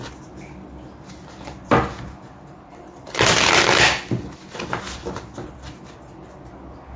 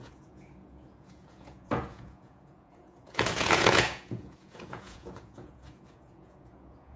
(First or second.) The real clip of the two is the first